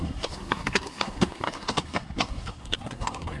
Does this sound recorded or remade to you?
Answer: remade